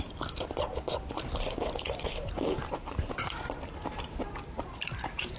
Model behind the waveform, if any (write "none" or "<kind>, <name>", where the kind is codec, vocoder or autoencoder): vocoder, BigVGAN v2